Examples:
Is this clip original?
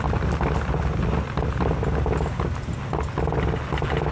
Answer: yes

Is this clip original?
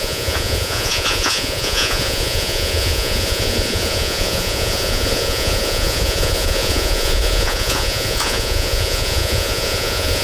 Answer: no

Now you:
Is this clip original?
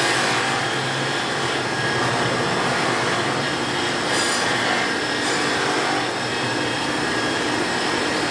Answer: yes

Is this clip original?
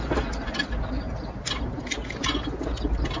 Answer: yes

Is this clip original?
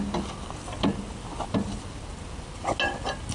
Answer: yes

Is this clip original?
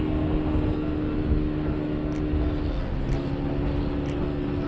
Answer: yes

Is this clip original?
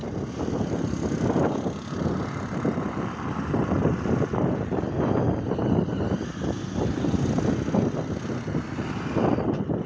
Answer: yes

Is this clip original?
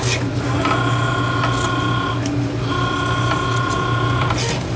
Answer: yes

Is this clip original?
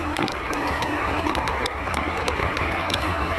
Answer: no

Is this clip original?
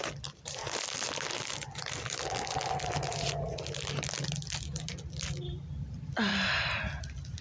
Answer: yes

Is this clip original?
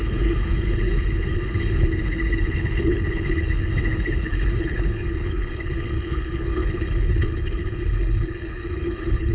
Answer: no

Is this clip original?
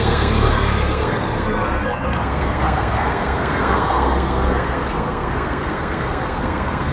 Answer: no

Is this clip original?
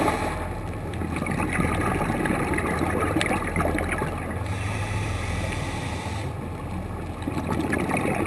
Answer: yes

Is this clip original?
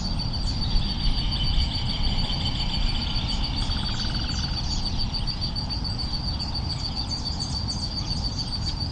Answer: yes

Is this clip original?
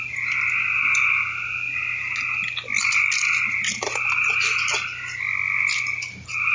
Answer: yes